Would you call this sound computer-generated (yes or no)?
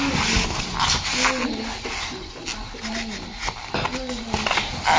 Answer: no